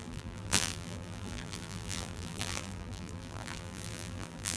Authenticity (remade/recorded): remade